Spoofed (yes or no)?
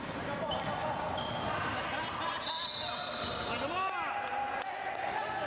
no